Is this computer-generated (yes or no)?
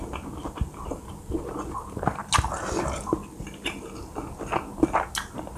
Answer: no